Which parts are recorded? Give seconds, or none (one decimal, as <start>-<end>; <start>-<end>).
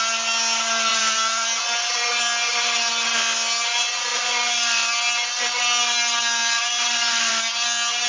0.0-0.9; 1.6-4.1; 4.9-6.4; 7.3-8.1